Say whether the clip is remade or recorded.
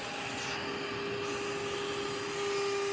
recorded